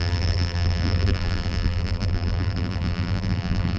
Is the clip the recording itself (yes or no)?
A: no